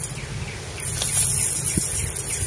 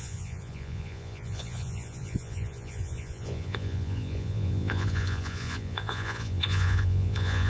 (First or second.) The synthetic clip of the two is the second